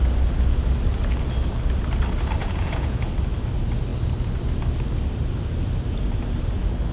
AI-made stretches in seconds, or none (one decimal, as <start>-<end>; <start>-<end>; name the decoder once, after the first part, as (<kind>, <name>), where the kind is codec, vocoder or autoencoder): 2.4-3.1 (vocoder, Vocos)